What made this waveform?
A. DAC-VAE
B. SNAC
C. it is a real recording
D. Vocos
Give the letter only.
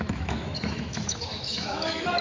A